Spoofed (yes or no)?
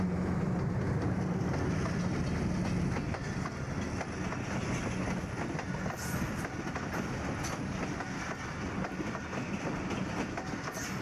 no